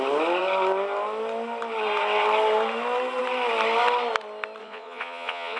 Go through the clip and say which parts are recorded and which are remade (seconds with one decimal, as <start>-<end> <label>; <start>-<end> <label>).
0.0-4.6 recorded; 4.6-5.6 remade